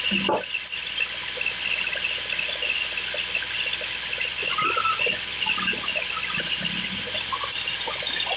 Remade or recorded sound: recorded